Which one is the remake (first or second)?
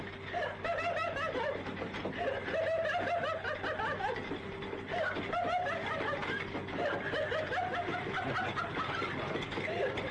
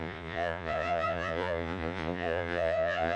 second